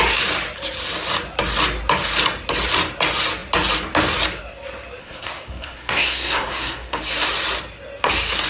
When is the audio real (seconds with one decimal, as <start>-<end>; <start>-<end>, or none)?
0.0-5.0; 7.0-8.5